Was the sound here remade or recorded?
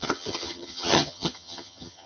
remade